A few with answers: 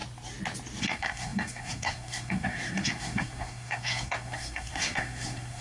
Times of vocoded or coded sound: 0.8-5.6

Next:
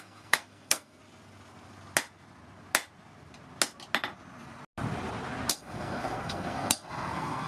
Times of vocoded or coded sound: 0.0-1.0; 5.5-7.5

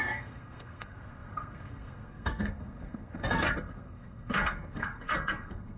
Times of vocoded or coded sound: 0.0-5.8

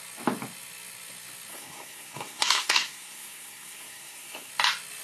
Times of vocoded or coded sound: 1.5-4.5

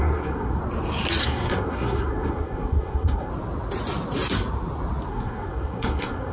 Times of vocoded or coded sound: 0.0-0.6; 1.2-3.3; 5.1-6.3

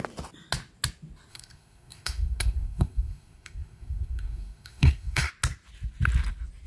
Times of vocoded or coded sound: 1.3-5.3

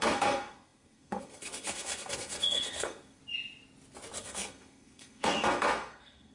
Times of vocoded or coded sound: 0.0-3.2; 4.2-6.3

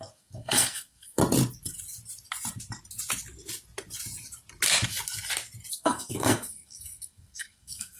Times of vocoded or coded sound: 0.0-1.2; 5.7-8.0